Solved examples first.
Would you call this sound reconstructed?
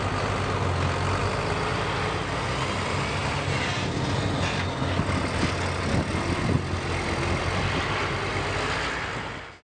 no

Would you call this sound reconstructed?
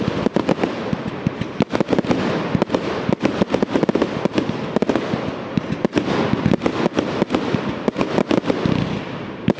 no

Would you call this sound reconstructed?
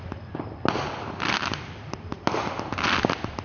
no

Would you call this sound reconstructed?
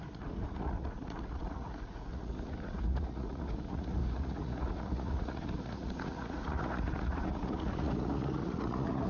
yes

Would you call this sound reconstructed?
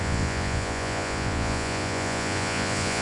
yes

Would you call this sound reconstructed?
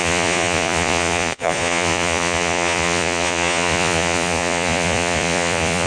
yes